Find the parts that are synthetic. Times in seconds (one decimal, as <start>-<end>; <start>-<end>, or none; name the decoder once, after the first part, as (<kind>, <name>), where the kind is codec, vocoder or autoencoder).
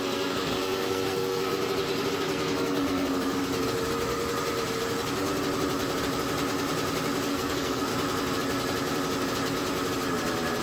0.0-1.5 (codec, SNAC); 2.1-3.4; 7.3-7.9